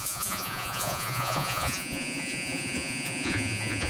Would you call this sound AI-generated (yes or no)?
yes